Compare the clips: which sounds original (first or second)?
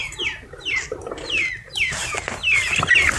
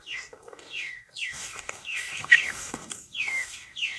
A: first